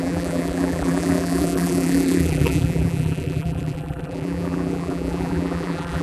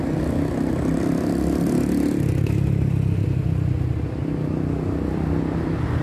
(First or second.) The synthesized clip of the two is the first